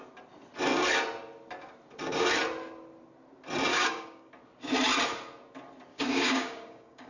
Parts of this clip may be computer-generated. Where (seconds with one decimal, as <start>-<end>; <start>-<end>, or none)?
3.7-4.3; 5.9-7.1